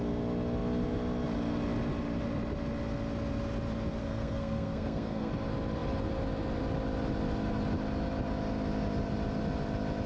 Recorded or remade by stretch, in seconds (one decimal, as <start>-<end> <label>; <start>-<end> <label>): 0.0-4.0 recorded; 4.0-5.3 remade; 5.3-10.1 recorded